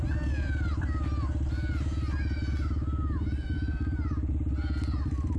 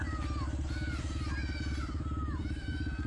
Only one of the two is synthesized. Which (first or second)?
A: second